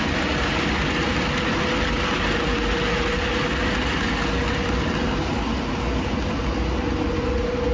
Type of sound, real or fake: real